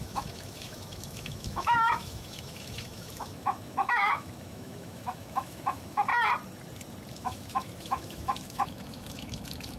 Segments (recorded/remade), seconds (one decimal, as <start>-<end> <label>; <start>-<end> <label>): 0.0-6.1 remade; 6.1-7.1 recorded; 7.1-9.8 remade